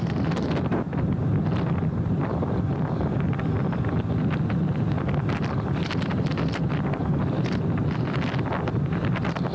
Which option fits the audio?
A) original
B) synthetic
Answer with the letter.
A